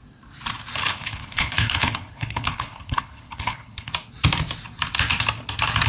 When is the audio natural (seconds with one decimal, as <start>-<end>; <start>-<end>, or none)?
0.0-0.9; 3.9-5.9